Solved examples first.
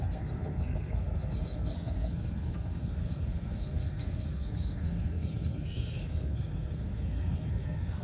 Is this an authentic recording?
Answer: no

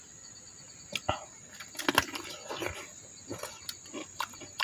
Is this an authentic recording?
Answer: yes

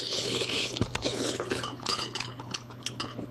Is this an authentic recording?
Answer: no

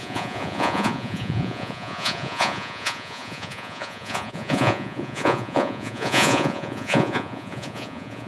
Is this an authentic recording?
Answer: no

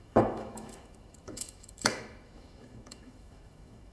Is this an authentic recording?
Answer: no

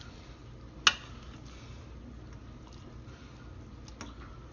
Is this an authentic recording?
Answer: yes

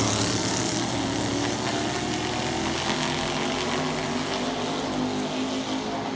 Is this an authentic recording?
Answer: yes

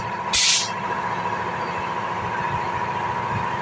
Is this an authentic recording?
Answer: yes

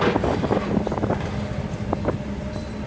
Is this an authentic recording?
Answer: yes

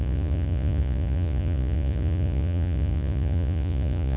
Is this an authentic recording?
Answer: no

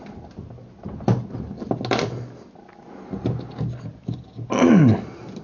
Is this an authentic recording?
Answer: yes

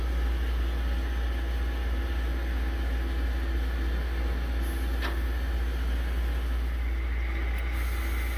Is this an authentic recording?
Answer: yes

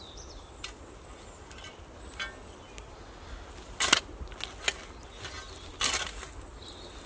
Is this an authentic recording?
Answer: yes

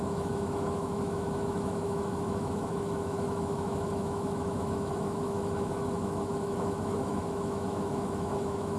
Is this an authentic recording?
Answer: no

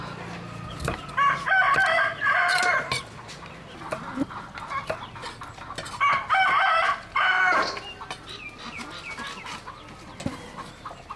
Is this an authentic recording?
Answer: yes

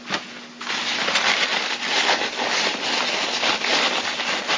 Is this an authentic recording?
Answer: yes